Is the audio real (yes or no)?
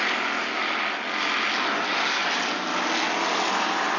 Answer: yes